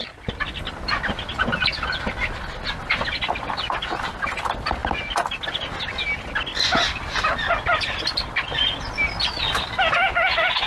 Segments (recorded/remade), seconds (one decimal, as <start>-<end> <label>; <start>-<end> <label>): 0.0-10.7 recorded